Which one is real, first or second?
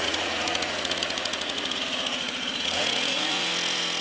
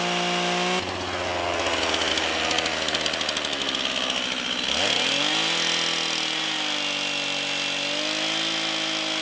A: second